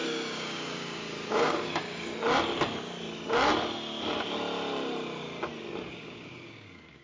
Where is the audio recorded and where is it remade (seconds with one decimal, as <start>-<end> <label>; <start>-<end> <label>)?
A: 0.0-2.1 remade; 2.1-5.9 recorded; 5.9-7.0 remade